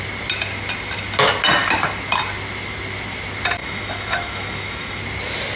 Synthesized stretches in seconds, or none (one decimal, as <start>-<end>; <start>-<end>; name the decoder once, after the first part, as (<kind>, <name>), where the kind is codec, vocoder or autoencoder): 3.6-5.0 (autoencoder, DAC-VAE)